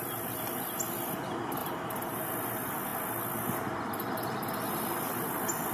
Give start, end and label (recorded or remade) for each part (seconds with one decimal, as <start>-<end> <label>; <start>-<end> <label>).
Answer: 0.0-1.6 recorded; 1.6-2.2 remade; 2.2-5.7 recorded